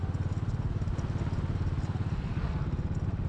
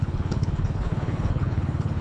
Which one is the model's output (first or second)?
second